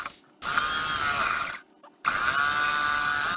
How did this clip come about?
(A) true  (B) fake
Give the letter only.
A